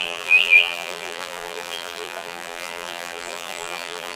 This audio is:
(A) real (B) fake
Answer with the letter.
B